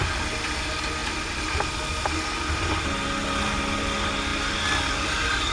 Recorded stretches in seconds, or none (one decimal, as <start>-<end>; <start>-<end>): 0.0-5.5